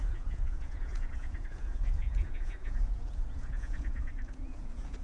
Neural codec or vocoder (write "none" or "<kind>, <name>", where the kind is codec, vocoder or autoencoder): vocoder, Vocos